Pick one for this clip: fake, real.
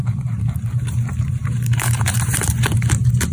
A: fake